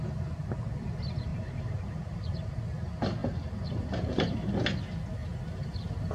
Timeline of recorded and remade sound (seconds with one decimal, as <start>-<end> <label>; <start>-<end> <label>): 0.0-1.3 recorded; 1.3-2.6 remade; 2.6-3.2 recorded; 3.2-4.5 remade; 4.5-5.2 recorded; 5.2-6.1 remade